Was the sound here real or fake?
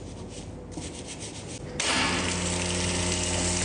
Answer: real